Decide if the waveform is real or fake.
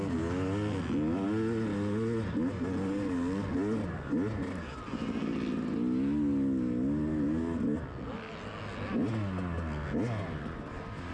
real